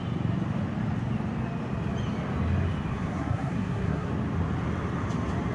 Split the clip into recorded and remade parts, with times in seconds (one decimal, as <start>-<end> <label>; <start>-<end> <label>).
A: 0.0-2.9 recorded; 2.9-4.1 remade; 4.1-5.5 recorded